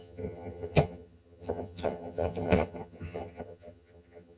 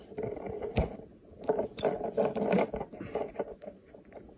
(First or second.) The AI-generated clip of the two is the first